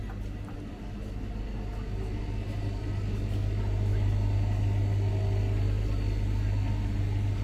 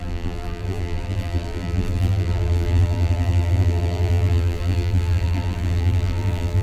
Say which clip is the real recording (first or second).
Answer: first